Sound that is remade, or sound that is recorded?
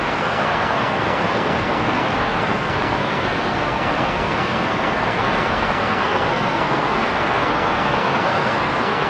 remade